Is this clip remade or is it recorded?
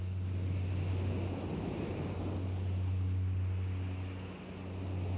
recorded